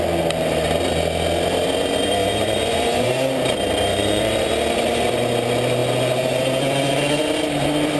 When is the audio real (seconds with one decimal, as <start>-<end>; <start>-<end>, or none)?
0.0-2.2; 3.1-3.9; 4.5-8.0